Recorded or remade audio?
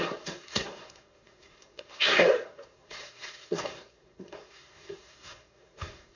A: remade